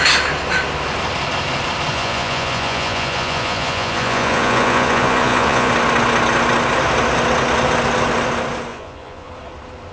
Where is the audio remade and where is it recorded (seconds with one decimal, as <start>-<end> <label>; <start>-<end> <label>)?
0.0-1.9 recorded; 1.9-5.7 remade; 5.7-8.7 recorded; 8.7-9.3 remade; 9.3-9.9 recorded